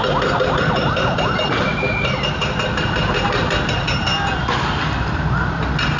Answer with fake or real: real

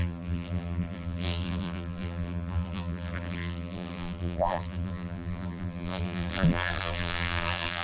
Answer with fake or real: fake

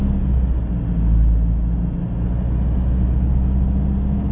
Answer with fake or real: real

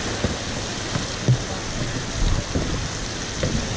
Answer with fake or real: real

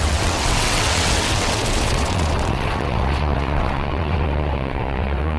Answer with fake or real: fake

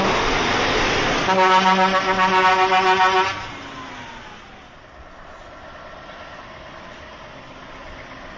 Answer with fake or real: real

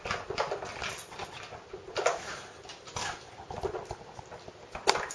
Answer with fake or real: real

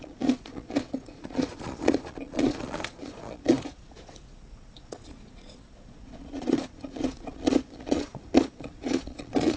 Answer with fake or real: fake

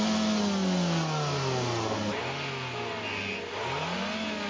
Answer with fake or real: real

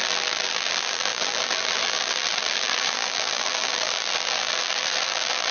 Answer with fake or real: fake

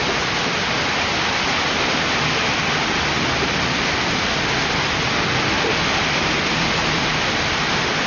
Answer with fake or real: real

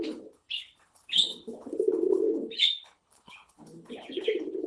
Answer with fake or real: fake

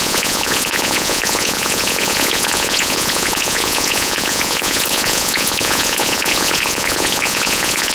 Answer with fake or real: fake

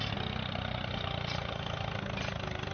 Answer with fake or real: real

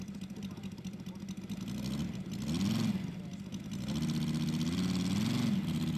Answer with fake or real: real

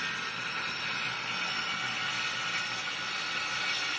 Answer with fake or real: real